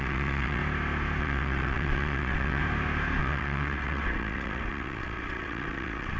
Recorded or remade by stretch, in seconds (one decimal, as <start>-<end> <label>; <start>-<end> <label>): 0.0-0.6 remade; 0.6-1.2 recorded; 1.2-2.6 remade; 2.6-3.2 recorded; 3.2-6.2 remade